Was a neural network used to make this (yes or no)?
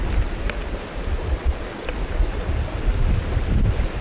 no